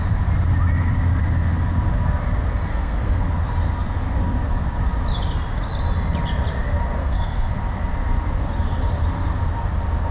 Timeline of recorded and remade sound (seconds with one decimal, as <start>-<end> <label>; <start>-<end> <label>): 0.0-2.7 recorded; 2.7-3.2 remade; 3.2-7.0 recorded; 7.0-7.5 remade; 7.5-10.1 recorded